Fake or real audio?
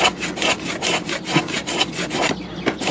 real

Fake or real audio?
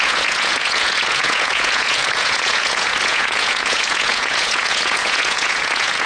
fake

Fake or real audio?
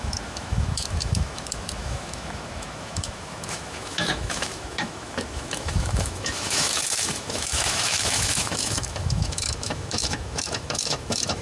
fake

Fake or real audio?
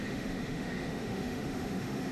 fake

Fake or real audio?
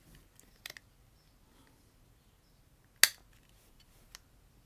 real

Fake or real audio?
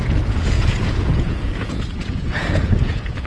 fake